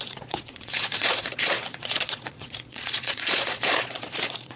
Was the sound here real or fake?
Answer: fake